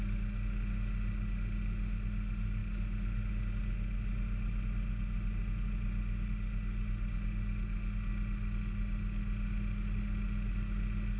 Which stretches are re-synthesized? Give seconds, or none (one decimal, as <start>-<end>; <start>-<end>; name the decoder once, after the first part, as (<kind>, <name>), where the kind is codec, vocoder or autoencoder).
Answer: none